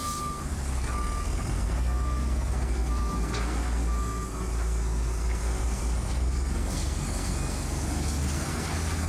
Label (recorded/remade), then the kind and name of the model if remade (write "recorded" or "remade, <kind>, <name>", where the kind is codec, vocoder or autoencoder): remade, codec, SNAC